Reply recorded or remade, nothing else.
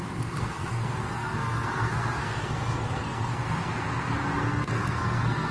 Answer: remade